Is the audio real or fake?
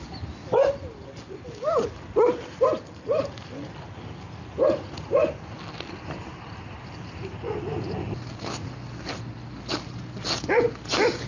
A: real